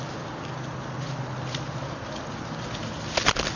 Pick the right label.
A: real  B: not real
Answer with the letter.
A